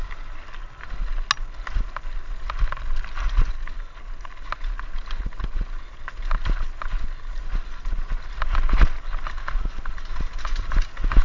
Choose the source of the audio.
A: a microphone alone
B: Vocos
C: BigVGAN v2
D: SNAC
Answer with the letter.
A